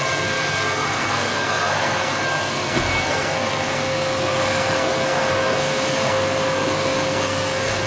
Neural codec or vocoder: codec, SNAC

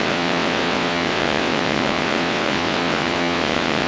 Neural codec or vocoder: vocoder, WaveNeXt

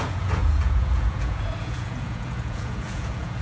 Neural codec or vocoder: vocoder, Vocos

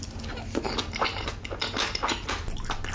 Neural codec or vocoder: none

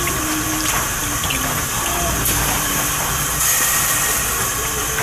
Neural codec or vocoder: none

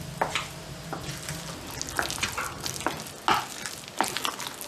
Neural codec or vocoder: none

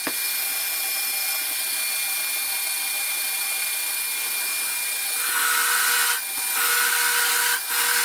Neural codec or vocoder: none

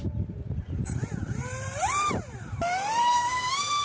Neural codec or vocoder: vocoder, BigVGAN v2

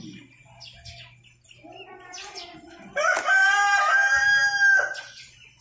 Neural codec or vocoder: none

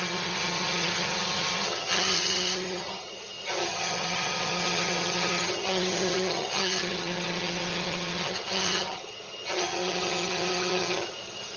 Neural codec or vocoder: vocoder, HiFi-GAN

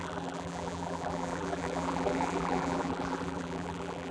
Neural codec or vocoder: vocoder, BigVGAN v2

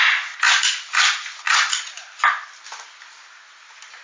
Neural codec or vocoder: none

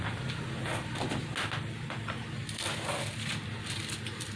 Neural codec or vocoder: none